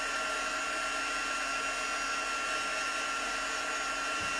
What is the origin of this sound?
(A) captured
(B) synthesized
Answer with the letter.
A